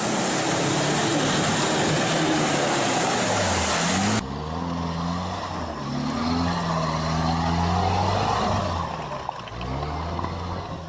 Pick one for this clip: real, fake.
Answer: real